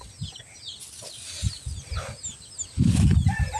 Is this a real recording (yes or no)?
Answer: yes